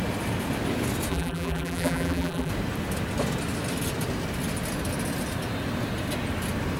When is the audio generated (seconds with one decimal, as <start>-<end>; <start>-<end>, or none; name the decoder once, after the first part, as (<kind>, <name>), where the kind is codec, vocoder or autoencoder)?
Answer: 1.1-2.5 (vocoder, BigVGAN v2)